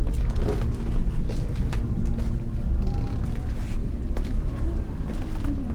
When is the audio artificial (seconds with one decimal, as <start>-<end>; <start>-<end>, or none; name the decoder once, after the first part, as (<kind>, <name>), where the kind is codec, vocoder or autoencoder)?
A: none